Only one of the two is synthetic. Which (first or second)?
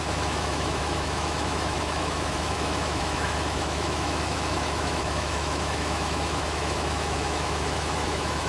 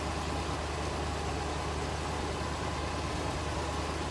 first